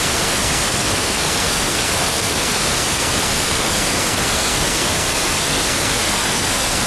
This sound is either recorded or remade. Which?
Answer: remade